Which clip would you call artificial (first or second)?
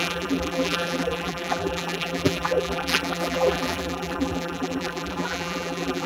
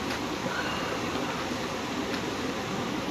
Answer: first